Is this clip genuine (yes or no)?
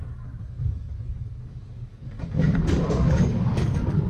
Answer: no